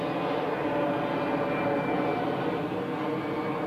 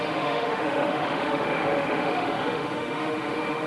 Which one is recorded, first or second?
first